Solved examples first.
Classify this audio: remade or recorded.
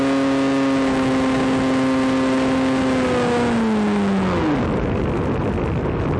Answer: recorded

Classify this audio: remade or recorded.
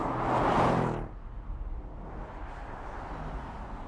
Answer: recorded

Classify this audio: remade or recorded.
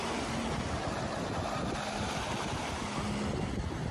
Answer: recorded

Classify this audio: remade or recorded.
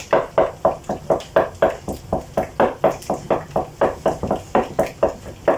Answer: recorded